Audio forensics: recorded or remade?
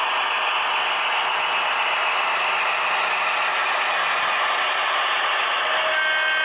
recorded